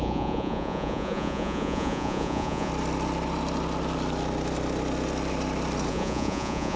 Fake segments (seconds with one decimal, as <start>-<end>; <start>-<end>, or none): 0.0-2.7; 5.9-6.8